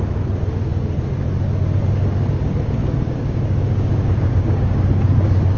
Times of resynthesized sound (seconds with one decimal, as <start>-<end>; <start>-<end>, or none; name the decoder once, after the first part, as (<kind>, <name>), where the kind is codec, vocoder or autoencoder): 2.8-4.9 (codec, DAC)